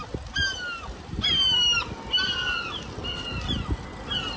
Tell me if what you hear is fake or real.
real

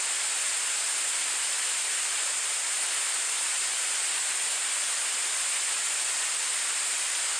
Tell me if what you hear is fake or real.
real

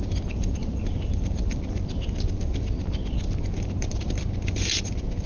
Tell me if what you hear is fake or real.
real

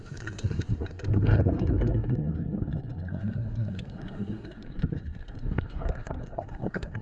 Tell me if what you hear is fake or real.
fake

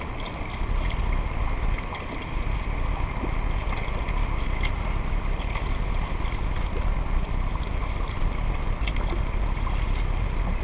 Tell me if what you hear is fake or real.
real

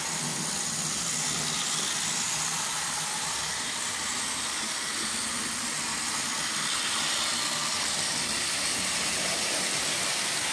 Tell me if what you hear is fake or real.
real